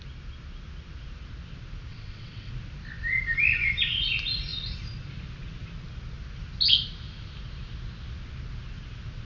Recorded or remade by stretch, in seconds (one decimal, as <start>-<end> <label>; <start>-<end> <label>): 0.0-1.9 recorded; 1.9-2.5 remade; 2.5-9.2 recorded